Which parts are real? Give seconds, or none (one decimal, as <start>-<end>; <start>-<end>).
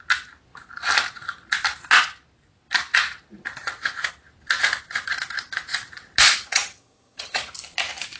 0.0-6.4; 7.5-8.2